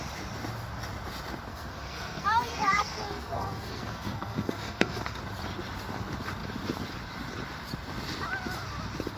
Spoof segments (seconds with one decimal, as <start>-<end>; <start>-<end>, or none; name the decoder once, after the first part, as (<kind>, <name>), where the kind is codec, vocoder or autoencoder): 1.5-5.2 (codec, SNAC)